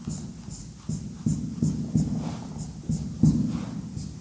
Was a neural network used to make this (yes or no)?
no